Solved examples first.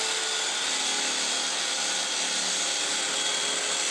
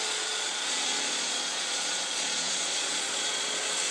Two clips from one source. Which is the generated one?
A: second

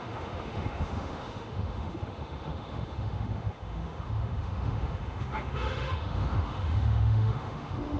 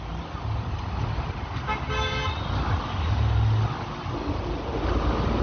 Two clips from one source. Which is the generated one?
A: first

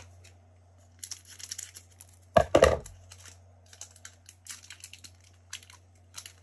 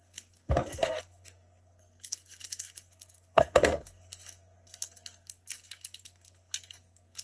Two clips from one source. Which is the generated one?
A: second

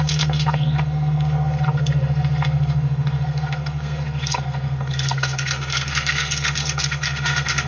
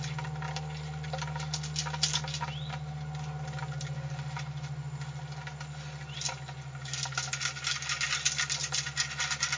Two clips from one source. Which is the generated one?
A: first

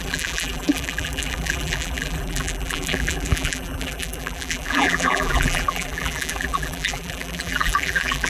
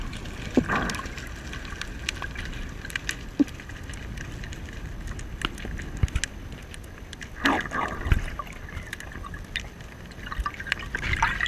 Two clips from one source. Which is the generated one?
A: first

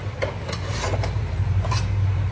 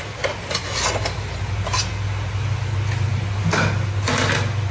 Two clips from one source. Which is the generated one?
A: first